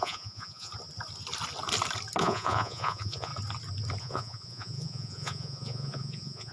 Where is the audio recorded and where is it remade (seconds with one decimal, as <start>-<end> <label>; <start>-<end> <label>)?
0.0-0.7 remade; 0.7-2.2 recorded; 2.2-3.3 remade; 3.3-4.0 recorded; 4.0-6.5 remade